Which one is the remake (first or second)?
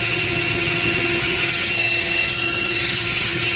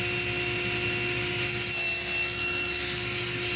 first